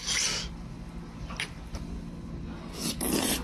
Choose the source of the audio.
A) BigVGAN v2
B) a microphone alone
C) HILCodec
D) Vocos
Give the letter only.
B